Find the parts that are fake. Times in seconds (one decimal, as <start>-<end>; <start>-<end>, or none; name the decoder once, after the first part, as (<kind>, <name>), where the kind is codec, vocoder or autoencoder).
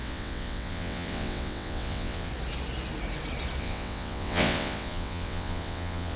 0.0-2.3 (vocoder, WaveNeXt); 3.6-6.2